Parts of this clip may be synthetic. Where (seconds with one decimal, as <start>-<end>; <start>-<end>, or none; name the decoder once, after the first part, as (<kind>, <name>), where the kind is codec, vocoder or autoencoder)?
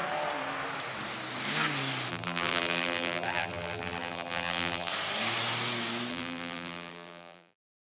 2.1-4.9 (vocoder, BigVGAN v2); 6.1-7.8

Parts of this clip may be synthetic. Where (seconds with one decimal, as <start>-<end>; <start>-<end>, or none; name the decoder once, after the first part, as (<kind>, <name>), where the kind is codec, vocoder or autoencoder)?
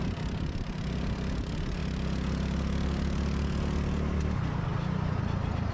none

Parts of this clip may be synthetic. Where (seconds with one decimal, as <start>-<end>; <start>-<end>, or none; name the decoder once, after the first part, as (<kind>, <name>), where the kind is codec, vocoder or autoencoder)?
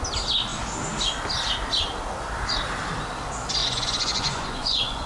3.6-5.1 (vocoder, Vocos)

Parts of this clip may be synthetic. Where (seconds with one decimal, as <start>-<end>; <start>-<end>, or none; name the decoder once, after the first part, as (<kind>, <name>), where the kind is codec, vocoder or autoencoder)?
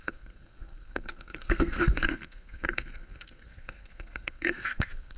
0.0-5.2 (codec, SNAC)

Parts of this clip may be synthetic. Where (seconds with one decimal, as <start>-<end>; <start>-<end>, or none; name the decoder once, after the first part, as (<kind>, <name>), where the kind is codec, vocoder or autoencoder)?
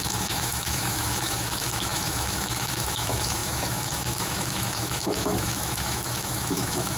0.0-7.0 (autoencoder, DAC-VAE)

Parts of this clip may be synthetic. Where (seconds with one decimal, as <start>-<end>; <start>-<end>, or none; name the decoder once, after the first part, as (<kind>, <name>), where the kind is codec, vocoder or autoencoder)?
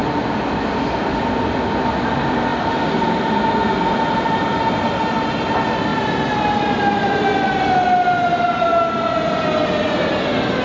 none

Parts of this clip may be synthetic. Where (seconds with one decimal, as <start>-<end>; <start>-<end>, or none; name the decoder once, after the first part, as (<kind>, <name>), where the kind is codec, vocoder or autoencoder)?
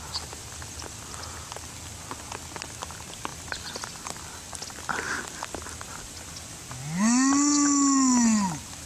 none